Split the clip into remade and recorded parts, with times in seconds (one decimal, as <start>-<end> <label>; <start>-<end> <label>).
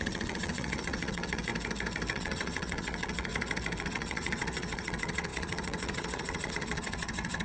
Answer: 0.0-1.5 remade; 1.5-2.1 recorded; 2.1-3.3 remade; 3.3-3.8 recorded; 3.8-7.4 remade